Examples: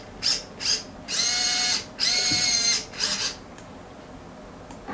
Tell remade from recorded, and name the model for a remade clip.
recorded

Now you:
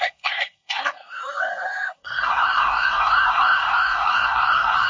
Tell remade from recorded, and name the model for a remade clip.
remade, codec, SNAC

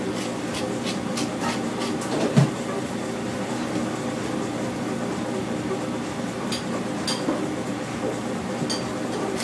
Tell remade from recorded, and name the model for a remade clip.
recorded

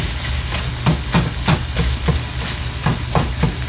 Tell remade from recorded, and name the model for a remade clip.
recorded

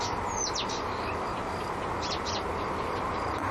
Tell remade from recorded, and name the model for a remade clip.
recorded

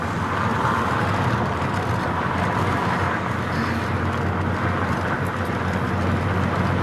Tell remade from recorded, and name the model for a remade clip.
recorded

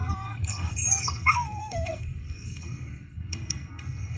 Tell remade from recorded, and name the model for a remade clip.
remade, codec, SNAC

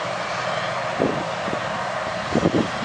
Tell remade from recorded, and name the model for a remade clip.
remade, vocoder, BigVGAN v2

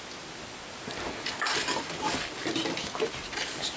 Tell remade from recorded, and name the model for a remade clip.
recorded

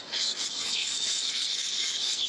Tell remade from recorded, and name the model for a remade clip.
remade, codec, SNAC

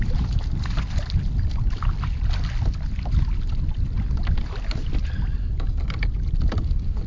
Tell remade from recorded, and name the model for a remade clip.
recorded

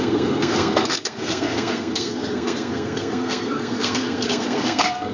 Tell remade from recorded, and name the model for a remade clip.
remade, codec, SNAC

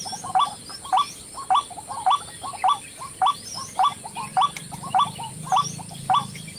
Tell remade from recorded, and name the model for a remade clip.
recorded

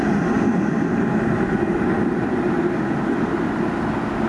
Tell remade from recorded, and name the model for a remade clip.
recorded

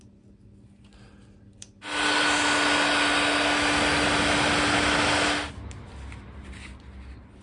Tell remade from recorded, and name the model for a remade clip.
recorded